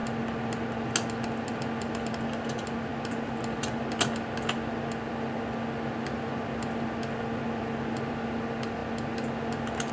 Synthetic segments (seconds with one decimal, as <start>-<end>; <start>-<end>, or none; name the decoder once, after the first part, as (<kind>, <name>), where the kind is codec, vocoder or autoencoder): none